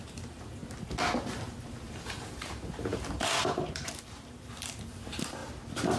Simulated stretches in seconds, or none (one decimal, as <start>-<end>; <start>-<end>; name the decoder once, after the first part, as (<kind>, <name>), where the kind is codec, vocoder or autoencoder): 0.0-0.6 (vocoder, BigVGAN v2); 1.9-5.4